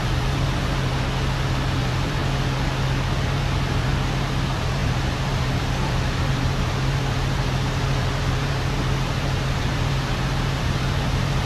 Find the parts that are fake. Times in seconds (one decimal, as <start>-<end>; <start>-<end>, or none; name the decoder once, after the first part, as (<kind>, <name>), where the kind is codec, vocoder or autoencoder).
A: 0.0-0.9 (vocoder, BigVGAN v2); 1.8-2.2; 3.2-11.5